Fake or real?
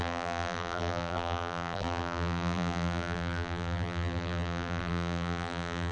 fake